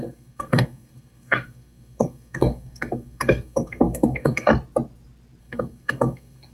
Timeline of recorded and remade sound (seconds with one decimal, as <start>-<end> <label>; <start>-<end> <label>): 0.0-4.5 remade; 4.5-5.4 recorded; 5.4-6.5 remade